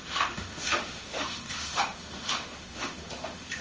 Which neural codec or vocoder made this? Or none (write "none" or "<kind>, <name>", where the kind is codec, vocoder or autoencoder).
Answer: autoencoder, DAC-VAE